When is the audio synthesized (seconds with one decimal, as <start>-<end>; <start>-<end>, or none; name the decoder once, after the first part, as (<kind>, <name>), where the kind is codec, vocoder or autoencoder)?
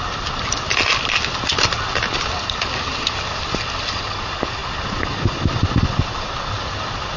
none